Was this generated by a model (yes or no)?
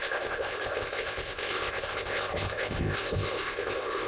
yes